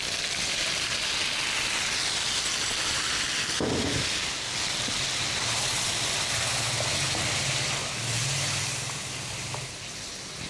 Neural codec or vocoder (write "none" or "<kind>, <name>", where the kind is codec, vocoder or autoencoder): none